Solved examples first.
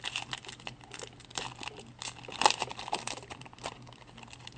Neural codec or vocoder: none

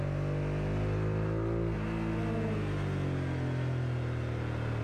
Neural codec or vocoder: none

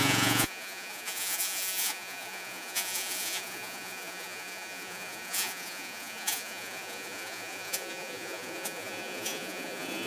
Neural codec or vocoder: vocoder, Vocos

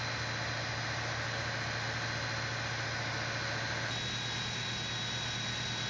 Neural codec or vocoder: none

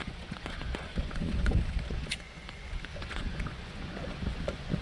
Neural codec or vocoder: vocoder, Vocos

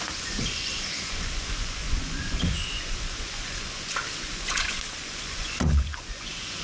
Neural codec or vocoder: vocoder, Vocos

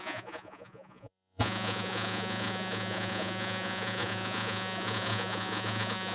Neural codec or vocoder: vocoder, Vocos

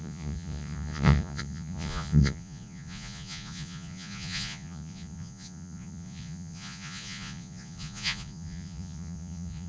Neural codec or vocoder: vocoder, Vocos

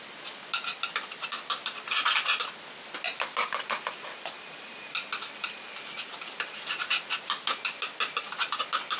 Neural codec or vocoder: none